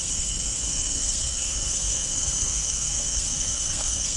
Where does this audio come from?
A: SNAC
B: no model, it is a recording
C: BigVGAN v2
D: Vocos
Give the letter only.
A